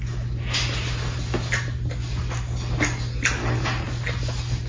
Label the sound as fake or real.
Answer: real